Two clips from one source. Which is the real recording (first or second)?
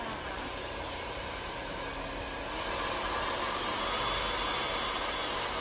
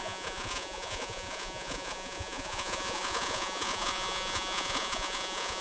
first